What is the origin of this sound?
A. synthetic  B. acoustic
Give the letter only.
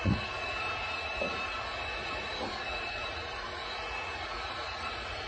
A